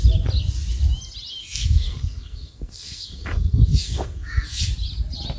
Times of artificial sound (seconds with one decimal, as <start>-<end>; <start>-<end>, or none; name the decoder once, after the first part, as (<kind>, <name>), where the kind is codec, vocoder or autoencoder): 1.4-4.6 (codec, SNAC)